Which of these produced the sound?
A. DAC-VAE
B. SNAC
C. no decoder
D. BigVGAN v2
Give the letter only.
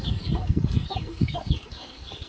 B